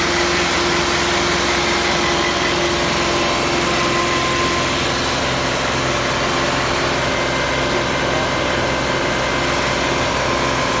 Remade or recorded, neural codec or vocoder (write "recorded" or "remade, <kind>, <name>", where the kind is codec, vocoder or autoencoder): recorded